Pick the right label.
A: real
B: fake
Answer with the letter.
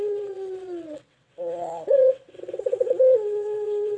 B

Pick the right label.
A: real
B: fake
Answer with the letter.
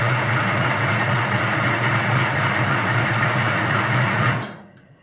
B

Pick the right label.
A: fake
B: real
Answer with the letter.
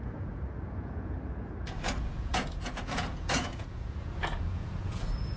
A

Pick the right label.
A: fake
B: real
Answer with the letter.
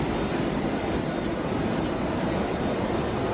B